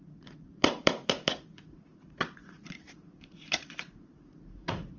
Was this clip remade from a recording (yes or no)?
yes